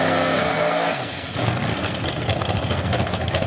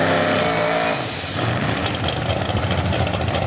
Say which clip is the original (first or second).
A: second